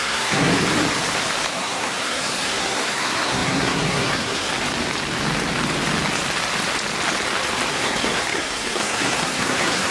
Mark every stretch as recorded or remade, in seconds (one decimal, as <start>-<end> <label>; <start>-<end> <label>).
0.0-0.5 remade; 0.5-1.5 recorded; 1.5-4.5 remade; 4.5-7.7 recorded; 7.7-9.9 remade